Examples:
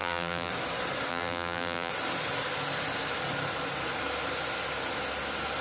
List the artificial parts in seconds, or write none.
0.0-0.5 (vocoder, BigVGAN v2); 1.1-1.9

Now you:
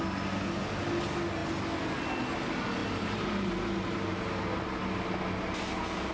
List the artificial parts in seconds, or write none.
2.8-3.5 (vocoder, BigVGAN v2)

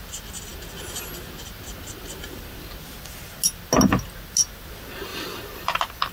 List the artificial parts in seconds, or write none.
5.1-6.1 (vocoder, BigVGAN v2)

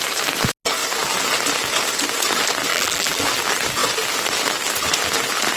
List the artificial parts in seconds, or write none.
2.7-3.2 (vocoder, BigVGAN v2)

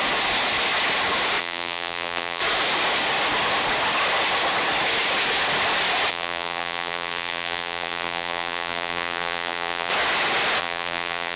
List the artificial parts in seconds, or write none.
1.4-2.4 (vocoder, BigVGAN v2); 6.1-9.9; 10.6-11.4

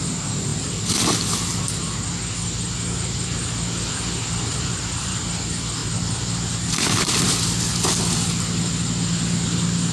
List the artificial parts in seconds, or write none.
4.5-5.2 (vocoder, BigVGAN v2)

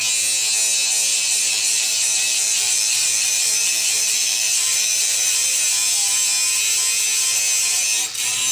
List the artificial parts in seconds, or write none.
1.1-5.6 (vocoder, BigVGAN v2)